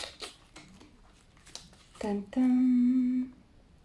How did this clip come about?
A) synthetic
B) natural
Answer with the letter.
B